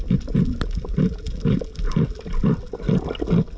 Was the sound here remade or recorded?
recorded